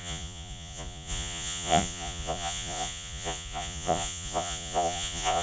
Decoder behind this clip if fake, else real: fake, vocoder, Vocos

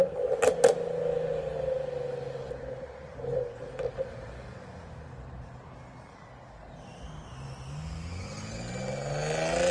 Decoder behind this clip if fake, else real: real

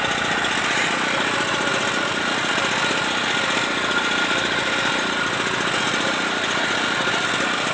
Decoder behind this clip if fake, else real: real